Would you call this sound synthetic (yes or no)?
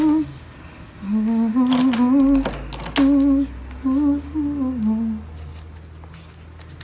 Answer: no